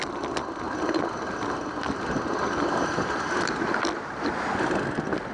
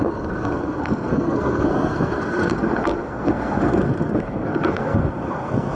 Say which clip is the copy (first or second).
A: second